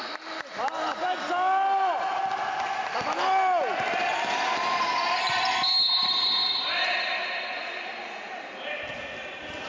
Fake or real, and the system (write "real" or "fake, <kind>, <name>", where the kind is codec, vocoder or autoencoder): real